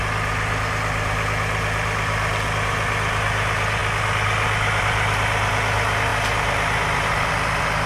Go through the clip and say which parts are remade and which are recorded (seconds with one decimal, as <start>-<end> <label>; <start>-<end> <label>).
0.0-7.9 recorded